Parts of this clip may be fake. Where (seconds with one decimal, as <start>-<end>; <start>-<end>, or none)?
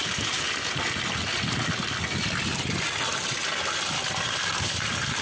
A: none